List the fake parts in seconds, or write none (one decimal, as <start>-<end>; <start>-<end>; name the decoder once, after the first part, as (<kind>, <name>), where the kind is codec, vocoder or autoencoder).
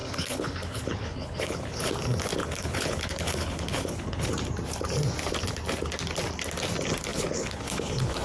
0.0-1.9 (codec, HILCodec); 2.4-4.3; 7.1-8.2